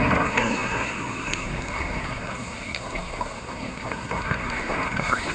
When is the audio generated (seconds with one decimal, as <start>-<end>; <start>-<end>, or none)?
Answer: 0.0-5.3